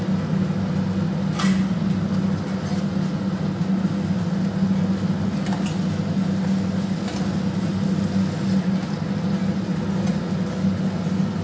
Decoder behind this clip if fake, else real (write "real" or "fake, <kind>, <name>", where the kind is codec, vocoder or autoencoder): real